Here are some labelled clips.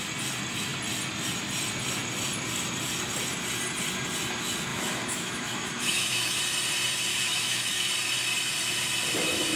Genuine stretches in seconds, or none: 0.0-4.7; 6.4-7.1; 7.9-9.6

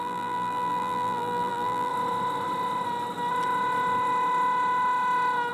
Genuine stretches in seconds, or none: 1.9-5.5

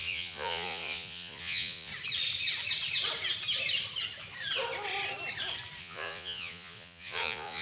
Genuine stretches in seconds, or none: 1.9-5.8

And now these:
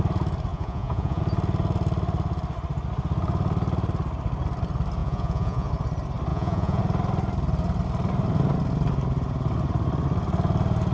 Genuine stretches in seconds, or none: 0.0-0.5; 1.2-5.0; 5.7-6.3; 6.8-10.9

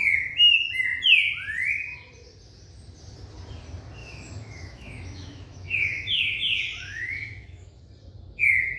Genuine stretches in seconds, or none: 0.0-4.0; 7.8-8.8

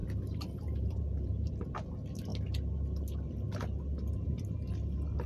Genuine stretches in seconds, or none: 1.5-5.3

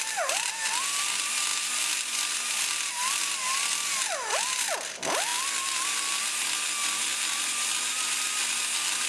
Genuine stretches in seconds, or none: 0.0-9.1

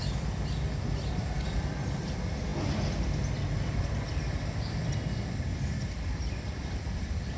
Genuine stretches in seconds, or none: none